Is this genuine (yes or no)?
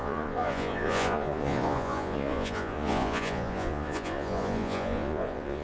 no